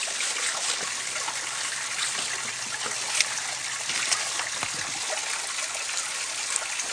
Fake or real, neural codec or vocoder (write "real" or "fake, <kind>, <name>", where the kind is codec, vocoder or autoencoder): real